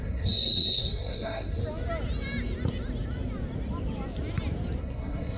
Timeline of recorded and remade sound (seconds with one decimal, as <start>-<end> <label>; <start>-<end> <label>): 0.0-1.6 remade; 1.6-4.8 recorded; 4.8-5.4 remade

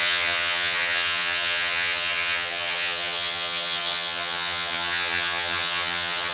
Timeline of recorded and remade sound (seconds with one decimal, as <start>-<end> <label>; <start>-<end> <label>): 0.0-6.3 remade

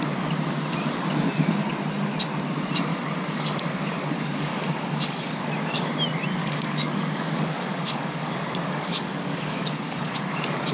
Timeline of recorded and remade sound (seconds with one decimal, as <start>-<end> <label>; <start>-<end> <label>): 0.0-2.9 recorded; 2.9-5.9 remade; 5.9-6.4 recorded; 6.4-10.7 remade

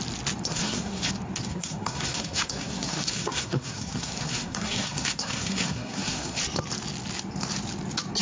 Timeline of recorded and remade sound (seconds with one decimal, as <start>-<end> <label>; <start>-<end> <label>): 0.0-0.5 recorded; 0.5-1.1 remade; 1.1-1.5 recorded; 1.5-6.4 remade; 6.4-8.2 recorded

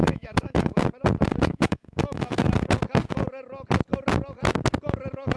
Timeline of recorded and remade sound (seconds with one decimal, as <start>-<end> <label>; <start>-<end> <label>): 0.0-0.8 remade; 0.8-1.4 recorded; 1.4-2.4 remade; 2.4-5.4 recorded

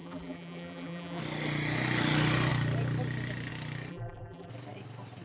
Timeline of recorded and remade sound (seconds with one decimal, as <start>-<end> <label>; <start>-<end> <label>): 0.0-1.2 remade; 1.2-3.9 recorded; 3.9-4.5 remade; 4.5-5.2 recorded

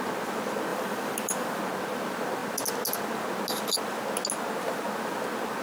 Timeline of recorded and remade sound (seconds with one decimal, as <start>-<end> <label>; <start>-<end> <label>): 0.0-0.7 recorded; 0.7-1.6 remade; 1.6-5.6 recorded